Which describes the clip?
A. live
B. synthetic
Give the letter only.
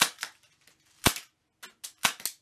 A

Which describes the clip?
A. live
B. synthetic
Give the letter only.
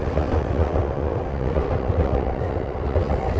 B